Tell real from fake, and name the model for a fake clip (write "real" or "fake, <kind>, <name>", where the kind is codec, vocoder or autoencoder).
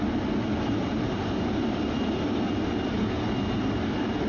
real